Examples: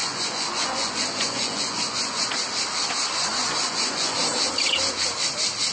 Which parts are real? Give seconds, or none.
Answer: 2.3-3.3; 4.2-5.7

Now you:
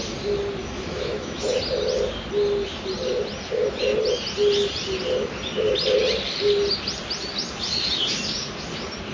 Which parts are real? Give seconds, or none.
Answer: 0.0-0.6; 1.6-9.1

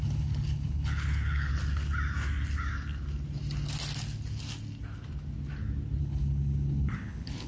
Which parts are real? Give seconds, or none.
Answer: 1.5-6.0

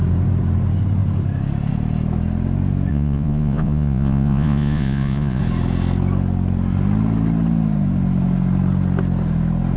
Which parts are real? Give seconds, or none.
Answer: 0.0-2.9; 5.4-9.8

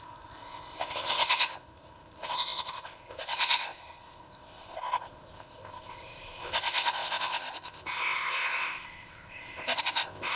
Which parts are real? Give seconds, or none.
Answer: none

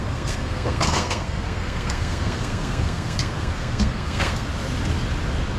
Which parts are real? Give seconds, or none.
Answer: 4.5-5.6